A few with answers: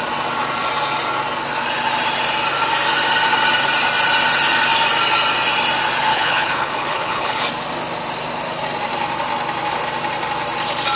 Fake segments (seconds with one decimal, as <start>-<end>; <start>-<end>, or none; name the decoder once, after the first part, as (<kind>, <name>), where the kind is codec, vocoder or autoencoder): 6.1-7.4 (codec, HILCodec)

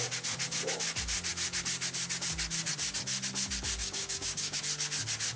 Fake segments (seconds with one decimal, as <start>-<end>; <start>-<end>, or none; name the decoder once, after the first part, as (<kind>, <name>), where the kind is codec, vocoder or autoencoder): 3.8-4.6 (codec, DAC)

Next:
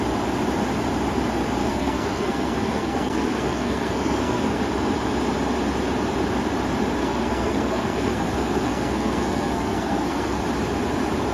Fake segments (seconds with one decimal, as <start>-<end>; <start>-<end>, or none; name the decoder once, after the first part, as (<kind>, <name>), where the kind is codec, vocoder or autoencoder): 1.6-4.6 (codec, SNAC); 7.0-10.4